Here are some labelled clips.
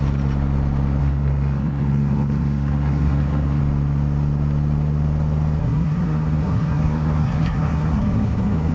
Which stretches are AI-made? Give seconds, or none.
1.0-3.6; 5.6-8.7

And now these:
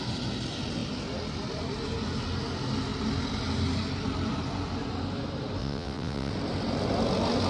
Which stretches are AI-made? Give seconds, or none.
5.6-6.3

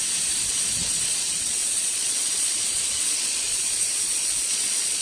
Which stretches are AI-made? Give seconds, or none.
0.5-5.0

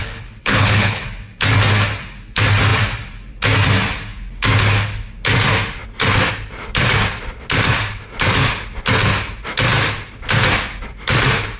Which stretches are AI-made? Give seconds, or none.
0.0-1.0

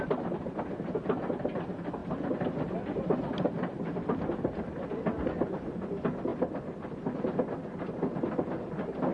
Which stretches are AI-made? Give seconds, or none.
2.0-4.6; 6.3-7.2

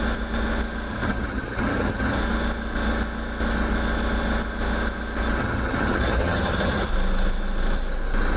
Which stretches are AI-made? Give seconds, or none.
0.9-2.2; 5.4-6.9

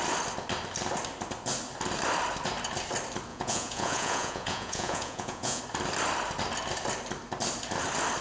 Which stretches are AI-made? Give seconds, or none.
3.3-5.6